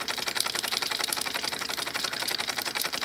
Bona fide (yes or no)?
no